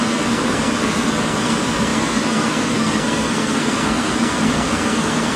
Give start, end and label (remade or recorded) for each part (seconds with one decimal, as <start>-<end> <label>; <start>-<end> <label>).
0.0-5.4 remade